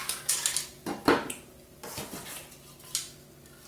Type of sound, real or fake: real